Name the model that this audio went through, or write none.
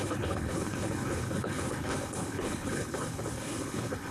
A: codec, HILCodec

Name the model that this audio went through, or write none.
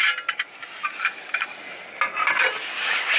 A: none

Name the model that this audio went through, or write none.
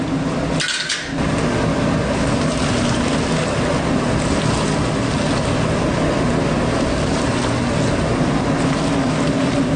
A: none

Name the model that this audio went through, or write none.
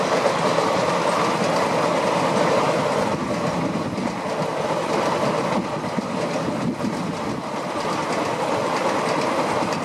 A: none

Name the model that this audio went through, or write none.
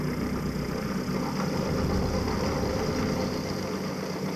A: none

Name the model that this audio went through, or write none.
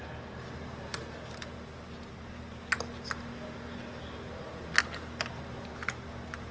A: none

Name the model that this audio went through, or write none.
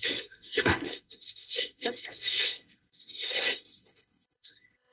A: codec, SNAC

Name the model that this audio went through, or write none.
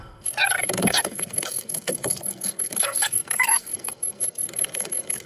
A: codec, SNAC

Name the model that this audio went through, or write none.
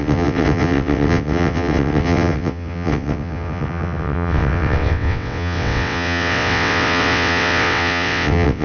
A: vocoder, WaveNeXt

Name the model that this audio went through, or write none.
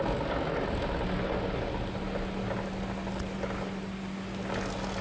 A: none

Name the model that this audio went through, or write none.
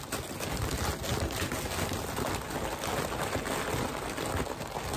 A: none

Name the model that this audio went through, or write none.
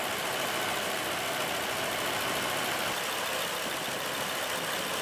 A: none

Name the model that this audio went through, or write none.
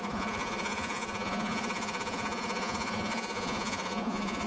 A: vocoder, Vocos